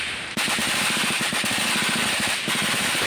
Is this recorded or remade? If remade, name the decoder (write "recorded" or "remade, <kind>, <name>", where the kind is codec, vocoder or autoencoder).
remade, vocoder, BigVGAN v2